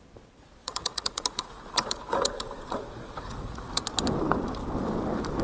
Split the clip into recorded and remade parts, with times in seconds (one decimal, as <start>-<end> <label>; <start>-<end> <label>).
0.0-0.6 recorded; 0.6-3.8 remade; 3.8-5.4 recorded